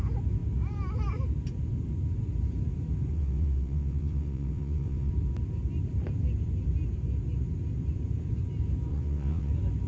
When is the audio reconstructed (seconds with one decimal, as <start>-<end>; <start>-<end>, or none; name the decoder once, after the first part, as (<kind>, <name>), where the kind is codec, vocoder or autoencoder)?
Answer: 3.1-5.1 (vocoder, WaveNeXt); 8.9-9.5